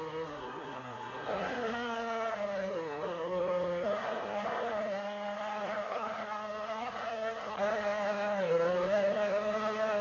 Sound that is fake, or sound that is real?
fake